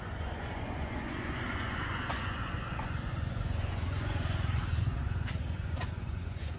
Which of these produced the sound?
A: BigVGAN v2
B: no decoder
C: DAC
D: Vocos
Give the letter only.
D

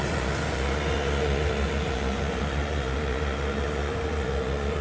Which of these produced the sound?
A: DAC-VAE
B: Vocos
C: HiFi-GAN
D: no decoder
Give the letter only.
B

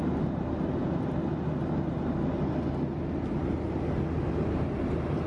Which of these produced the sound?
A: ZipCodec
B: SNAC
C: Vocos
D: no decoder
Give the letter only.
D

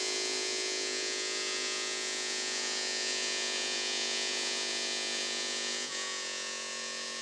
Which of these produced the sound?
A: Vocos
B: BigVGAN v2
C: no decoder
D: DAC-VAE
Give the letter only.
A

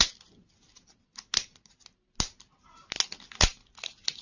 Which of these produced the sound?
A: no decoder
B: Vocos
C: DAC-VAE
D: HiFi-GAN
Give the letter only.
A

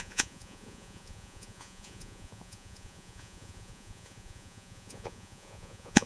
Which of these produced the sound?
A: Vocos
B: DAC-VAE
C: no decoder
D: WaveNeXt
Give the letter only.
A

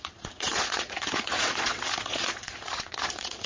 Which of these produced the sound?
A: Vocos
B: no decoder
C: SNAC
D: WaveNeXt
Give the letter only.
A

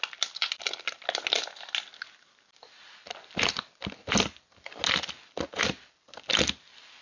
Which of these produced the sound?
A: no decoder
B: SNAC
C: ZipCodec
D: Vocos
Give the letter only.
A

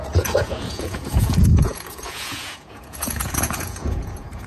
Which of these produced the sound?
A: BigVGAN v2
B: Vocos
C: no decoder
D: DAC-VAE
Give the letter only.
B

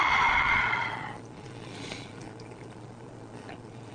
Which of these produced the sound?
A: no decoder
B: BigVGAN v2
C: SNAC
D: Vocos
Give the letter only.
D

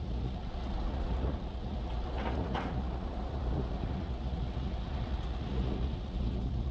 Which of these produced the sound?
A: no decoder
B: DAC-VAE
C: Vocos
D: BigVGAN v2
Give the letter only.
C